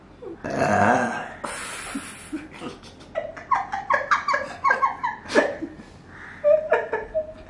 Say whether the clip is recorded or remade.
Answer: recorded